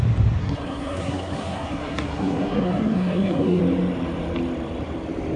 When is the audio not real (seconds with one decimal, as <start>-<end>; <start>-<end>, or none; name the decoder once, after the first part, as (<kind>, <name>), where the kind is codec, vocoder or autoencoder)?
0.4-3.6 (codec, SNAC)

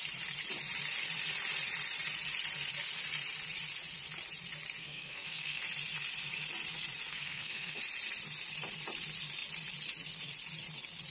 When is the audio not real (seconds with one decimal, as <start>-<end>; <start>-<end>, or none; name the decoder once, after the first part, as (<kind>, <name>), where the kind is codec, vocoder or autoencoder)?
4.8-5.6 (codec, SNAC); 7.1-7.8